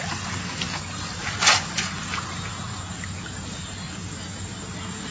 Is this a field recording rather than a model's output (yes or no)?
yes